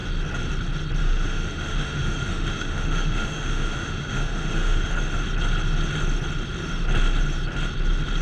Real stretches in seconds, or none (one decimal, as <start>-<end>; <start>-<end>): 0.0-1.0; 4.9-8.2